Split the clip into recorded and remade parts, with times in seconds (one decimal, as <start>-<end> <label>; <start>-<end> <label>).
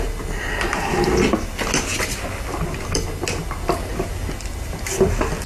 0.0-5.5 recorded